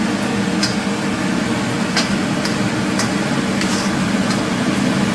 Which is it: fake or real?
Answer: real